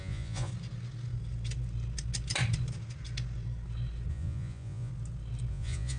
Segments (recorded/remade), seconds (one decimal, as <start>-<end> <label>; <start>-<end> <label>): 0.0-0.5 remade; 0.5-4.1 recorded; 4.1-4.9 remade; 4.9-5.5 recorded; 5.5-6.0 remade

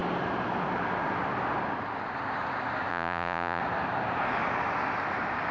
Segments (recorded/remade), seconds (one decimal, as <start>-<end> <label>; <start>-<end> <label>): 0.0-2.9 recorded; 2.9-3.6 remade; 3.6-5.5 recorded

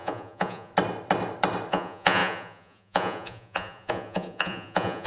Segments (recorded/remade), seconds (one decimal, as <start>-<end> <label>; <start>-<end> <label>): 0.0-0.7 remade; 0.7-1.7 recorded; 1.7-5.1 remade

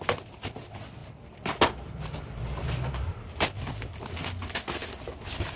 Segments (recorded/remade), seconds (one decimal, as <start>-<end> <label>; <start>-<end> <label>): 0.0-5.6 recorded

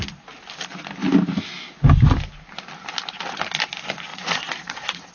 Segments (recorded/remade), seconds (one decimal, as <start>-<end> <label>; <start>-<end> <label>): 0.0-4.1 recorded; 4.1-5.1 remade

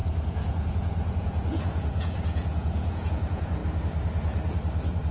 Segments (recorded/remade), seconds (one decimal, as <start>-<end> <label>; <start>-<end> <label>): 0.0-3.6 remade; 3.6-5.1 recorded

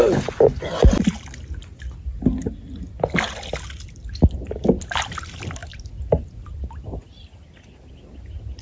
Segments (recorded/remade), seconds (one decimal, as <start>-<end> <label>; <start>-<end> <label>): 0.0-8.6 recorded

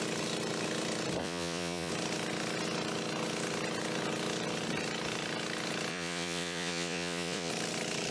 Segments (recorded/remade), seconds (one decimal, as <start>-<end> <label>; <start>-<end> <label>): 0.0-1.2 recorded; 1.2-1.9 remade; 1.9-5.9 recorded; 5.9-7.5 remade; 7.5-8.1 recorded